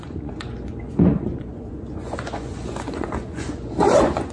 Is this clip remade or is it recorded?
remade